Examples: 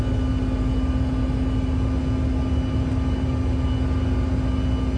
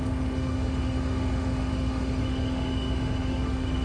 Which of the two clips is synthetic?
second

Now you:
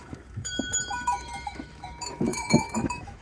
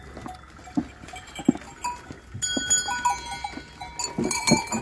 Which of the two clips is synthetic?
first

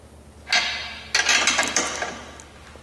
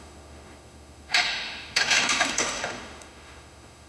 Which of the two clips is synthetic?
second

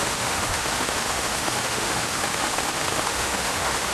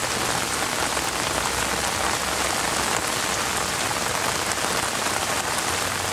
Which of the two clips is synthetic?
first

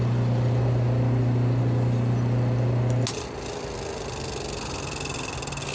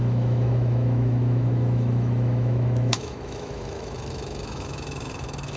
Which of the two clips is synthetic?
second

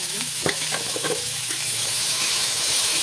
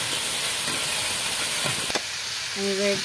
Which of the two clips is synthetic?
first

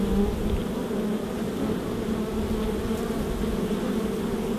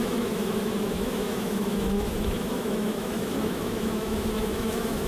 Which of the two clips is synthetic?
second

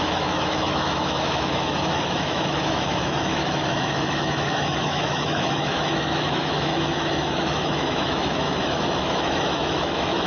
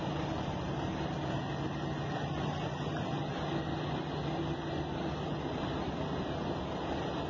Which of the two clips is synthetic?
first